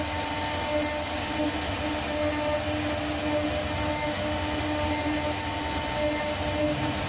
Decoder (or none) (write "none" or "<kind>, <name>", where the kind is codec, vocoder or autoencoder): none